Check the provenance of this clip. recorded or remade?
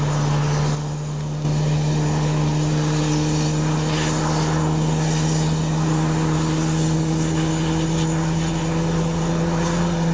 recorded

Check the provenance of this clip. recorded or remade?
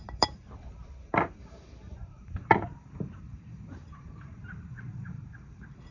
remade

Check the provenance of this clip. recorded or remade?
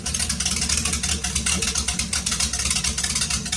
recorded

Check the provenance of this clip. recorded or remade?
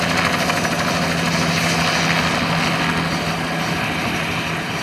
recorded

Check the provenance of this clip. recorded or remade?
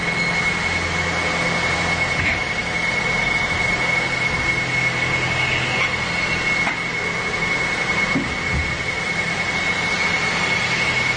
recorded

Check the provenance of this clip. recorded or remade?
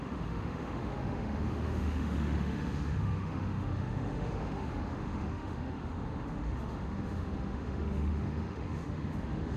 remade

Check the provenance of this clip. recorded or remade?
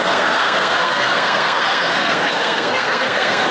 remade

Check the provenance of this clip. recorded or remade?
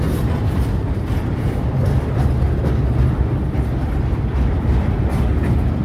recorded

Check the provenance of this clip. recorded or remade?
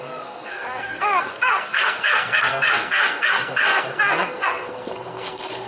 remade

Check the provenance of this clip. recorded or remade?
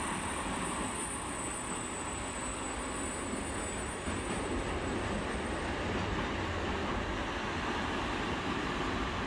recorded